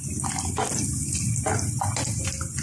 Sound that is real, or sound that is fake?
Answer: real